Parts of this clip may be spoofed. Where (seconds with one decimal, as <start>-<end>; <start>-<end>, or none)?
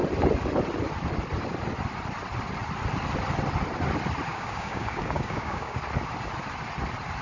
4.3-5.8